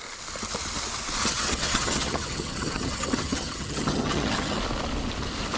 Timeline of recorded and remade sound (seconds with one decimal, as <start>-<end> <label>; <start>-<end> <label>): 0.0-1.2 recorded; 1.2-4.6 remade; 4.6-5.6 recorded